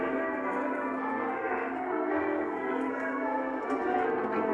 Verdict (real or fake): fake